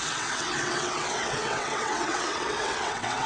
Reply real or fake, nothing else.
fake